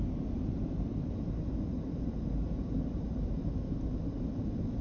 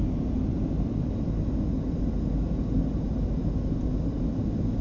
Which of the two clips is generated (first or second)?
first